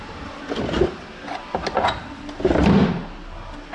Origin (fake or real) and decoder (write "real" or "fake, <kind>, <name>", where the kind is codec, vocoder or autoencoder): real